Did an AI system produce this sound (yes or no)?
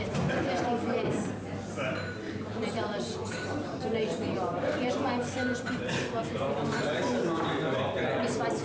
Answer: yes